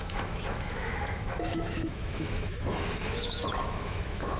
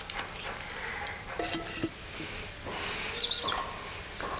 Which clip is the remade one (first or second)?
first